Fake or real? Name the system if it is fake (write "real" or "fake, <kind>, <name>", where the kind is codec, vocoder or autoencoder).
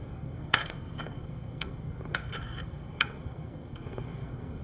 fake, codec, SNAC